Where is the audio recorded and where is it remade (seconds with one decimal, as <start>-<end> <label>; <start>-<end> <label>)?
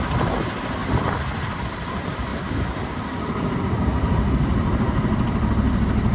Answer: 0.0-0.8 recorded; 0.8-1.6 remade; 1.6-6.1 recorded